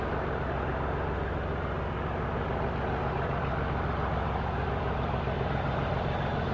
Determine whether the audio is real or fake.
real